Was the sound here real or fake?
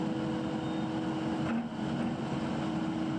real